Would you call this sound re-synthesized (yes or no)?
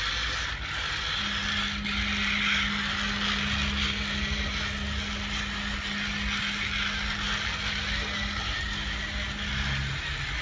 no